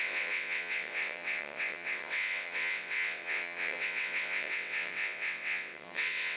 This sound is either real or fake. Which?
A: fake